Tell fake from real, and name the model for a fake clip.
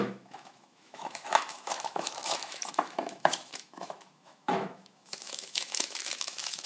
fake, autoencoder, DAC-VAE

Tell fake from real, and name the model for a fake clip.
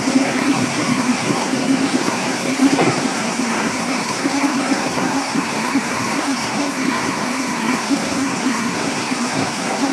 fake, codec, SNAC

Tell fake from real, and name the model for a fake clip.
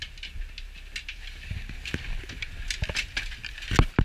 real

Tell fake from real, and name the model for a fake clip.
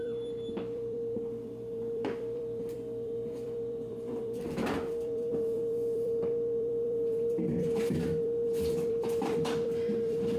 fake, vocoder, BigVGAN v2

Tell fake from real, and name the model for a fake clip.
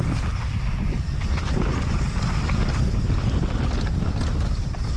real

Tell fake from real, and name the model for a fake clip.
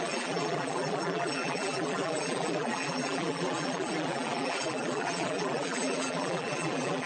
fake, vocoder, BigVGAN v2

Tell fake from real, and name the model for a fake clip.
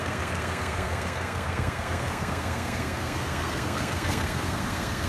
fake, codec, SNAC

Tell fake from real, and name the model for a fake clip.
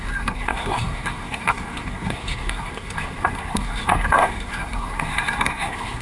fake, codec, SNAC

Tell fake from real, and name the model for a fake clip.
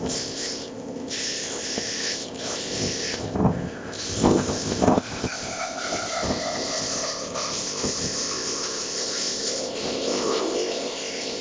fake, codec, ZipCodec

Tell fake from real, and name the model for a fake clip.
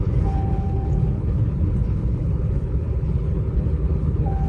fake, codec, HILCodec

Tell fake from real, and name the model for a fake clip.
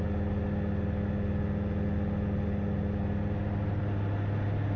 real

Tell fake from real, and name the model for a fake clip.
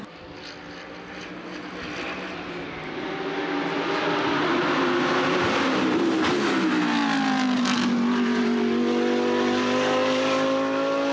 real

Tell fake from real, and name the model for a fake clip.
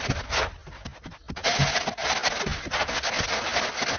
real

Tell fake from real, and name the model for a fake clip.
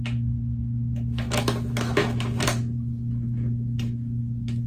fake, autoencoder, DAC-VAE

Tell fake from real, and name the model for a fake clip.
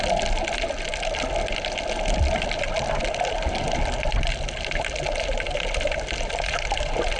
real